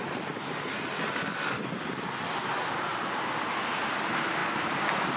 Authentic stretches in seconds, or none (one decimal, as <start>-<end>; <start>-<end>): 0.0-5.2